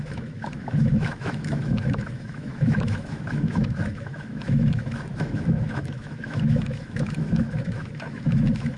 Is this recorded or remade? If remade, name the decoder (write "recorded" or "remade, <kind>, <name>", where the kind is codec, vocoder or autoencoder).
remade, autoencoder, DAC-VAE